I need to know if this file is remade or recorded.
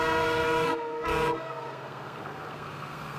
remade